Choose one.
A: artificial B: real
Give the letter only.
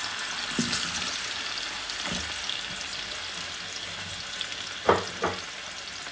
B